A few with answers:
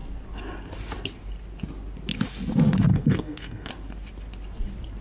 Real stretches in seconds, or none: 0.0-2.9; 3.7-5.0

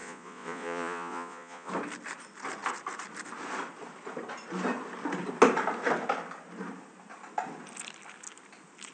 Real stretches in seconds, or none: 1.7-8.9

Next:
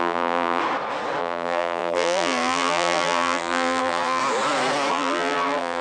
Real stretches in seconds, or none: 0.6-1.2; 4.2-4.9